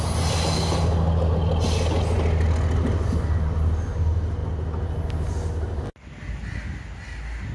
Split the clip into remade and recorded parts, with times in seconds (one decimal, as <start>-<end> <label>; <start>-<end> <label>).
0.0-7.5 recorded